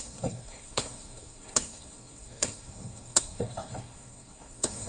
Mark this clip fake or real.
fake